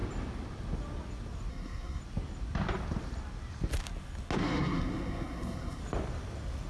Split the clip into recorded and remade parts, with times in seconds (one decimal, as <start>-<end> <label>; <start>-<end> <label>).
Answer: 0.0-1.5 recorded; 1.5-2.0 remade; 2.0-4.4 recorded; 4.4-5.8 remade; 5.8-6.7 recorded